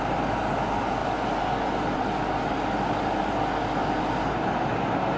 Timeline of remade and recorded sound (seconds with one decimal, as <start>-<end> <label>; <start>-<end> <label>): 0.0-5.2 recorded